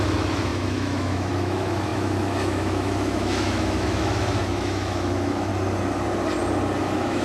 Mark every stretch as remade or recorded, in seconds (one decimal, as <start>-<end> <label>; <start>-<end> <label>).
0.0-5.5 remade; 5.5-6.8 recorded; 6.8-7.2 remade